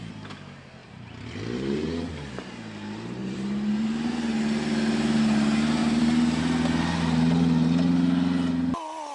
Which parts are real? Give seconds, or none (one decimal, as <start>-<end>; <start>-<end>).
0.0-0.8; 2.3-3.2; 4.1-5.8; 6.4-9.1